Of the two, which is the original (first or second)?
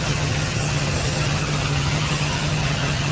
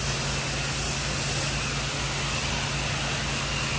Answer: second